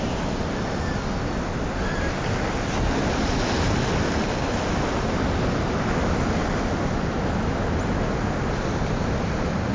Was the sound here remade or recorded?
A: recorded